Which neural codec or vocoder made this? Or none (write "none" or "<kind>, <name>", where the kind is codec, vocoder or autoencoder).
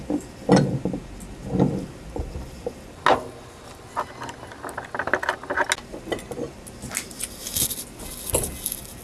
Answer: none